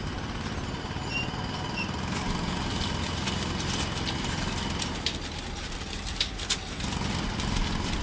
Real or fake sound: real